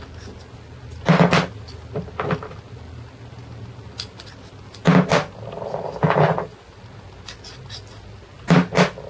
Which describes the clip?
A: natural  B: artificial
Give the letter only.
A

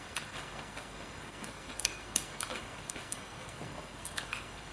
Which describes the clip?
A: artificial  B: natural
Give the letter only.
A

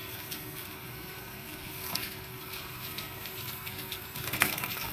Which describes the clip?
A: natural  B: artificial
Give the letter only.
B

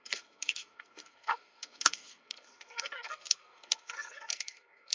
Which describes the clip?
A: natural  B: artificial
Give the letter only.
B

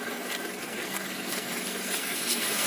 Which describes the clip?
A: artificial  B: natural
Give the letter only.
A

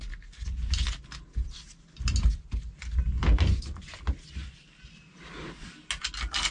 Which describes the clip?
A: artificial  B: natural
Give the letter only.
B